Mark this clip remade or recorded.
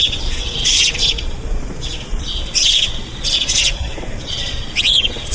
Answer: remade